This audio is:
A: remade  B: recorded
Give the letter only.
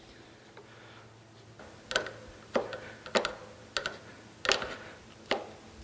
B